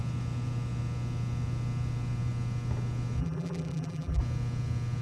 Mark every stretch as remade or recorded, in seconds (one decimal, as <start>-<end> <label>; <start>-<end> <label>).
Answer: 0.0-3.2 recorded; 3.2-4.2 remade; 4.2-5.0 recorded